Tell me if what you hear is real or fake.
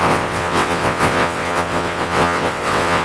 fake